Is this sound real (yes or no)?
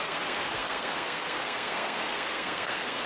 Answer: no